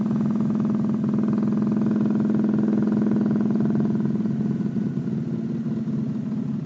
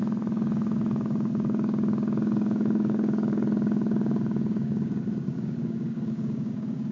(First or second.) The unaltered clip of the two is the first